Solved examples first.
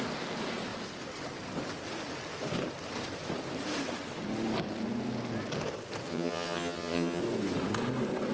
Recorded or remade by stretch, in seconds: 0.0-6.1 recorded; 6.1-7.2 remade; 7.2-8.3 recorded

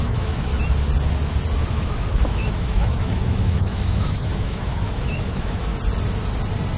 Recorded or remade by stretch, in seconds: 0.0-0.5 remade; 0.5-1.7 recorded; 1.7-5.7 remade; 5.7-6.8 recorded